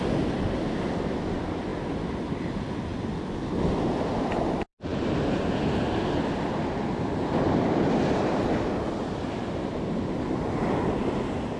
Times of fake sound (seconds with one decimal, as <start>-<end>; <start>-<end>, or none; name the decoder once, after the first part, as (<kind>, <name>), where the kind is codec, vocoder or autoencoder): 4.7-8.5 (vocoder, BigVGAN v2)